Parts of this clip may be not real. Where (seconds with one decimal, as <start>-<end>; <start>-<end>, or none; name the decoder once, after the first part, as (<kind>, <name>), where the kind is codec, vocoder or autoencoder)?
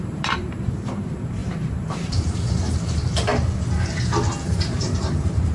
0.0-3.3 (vocoder, BigVGAN v2); 4.4-5.5